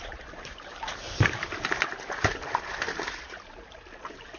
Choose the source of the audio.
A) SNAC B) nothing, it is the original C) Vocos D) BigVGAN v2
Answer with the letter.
D